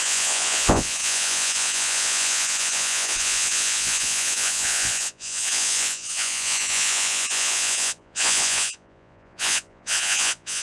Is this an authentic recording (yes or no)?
no